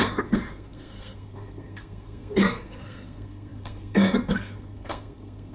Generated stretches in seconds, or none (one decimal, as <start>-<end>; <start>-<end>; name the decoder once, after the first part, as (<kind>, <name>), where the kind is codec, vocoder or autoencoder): 0.0-5.5 (codec, SNAC)